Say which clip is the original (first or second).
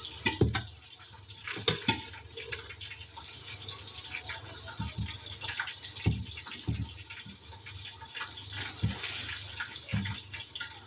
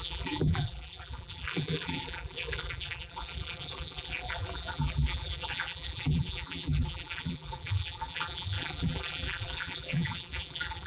first